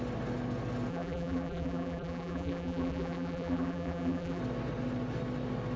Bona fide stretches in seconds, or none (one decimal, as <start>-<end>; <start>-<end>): 0.0-0.9; 4.4-5.8